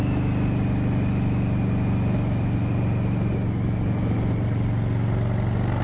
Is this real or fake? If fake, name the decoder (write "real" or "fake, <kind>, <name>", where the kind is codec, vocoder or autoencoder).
real